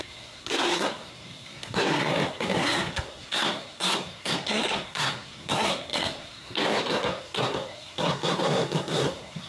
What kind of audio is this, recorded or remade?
remade